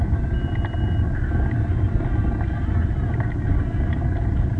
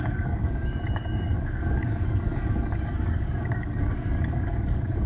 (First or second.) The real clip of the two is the first